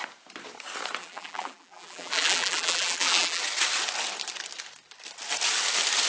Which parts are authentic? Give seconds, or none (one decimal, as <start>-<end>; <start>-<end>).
0.0-1.0; 3.4-6.1